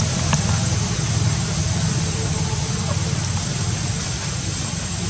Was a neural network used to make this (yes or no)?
no